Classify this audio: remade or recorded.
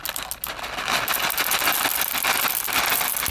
recorded